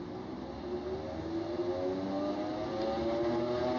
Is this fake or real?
real